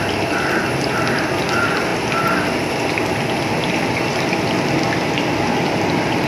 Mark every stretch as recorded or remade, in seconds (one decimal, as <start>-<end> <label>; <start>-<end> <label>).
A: 0.0-6.3 recorded

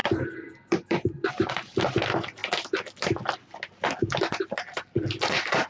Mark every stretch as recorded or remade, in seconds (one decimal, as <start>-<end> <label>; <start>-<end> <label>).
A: 0.0-1.3 remade; 1.3-5.7 recorded